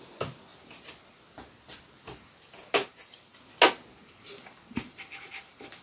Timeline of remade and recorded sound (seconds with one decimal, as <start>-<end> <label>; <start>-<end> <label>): 0.0-2.8 recorded; 2.8-3.4 remade; 3.4-4.0 recorded; 4.0-5.8 remade